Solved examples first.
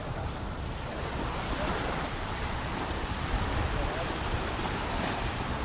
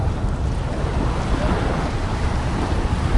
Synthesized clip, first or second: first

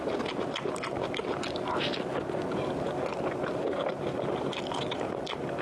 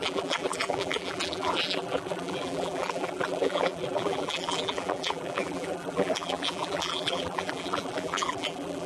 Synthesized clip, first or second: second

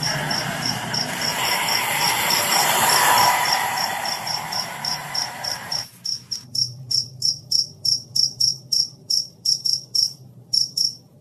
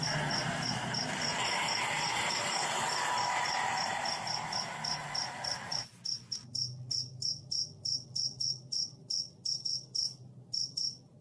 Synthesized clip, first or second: first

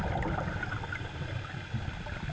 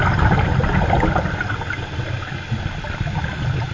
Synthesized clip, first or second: first